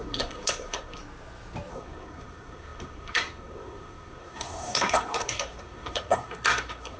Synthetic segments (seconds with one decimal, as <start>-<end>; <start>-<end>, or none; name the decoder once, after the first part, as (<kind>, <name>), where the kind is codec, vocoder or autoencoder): 0.0-1.0 (codec, SNAC); 1.7-7.0